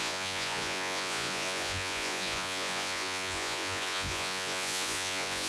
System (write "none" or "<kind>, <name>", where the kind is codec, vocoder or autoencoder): vocoder, Vocos